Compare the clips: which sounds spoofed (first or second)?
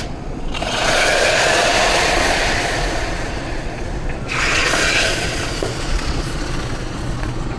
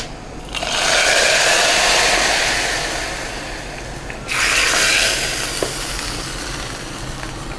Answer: first